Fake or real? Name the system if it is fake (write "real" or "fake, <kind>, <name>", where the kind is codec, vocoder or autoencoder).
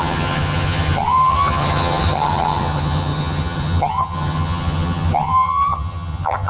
fake, vocoder, HiFi-GAN